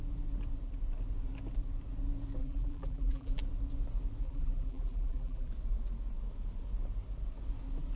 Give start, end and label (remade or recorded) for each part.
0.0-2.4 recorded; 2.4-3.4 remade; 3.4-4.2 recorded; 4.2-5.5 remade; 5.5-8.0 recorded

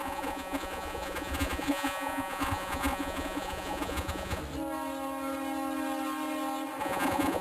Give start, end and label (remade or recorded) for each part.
0.0-4.4 remade; 4.4-6.8 recorded; 6.8-7.4 remade

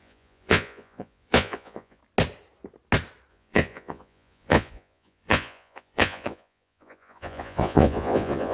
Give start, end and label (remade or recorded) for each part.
0.0-2.0 remade; 2.0-3.3 recorded; 3.3-8.5 remade

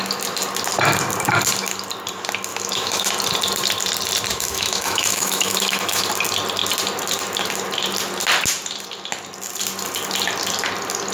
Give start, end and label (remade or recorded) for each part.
0.0-2.5 recorded; 2.5-3.1 remade; 3.1-4.3 recorded; 4.3-6.1 remade; 6.1-11.1 recorded

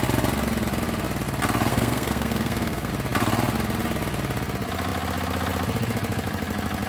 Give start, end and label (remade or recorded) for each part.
0.0-1.7 recorded; 1.7-2.9 remade; 2.9-6.9 recorded

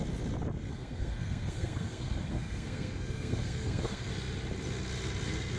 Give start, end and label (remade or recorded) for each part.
0.0-0.7 recorded; 0.7-4.1 remade; 4.1-5.6 recorded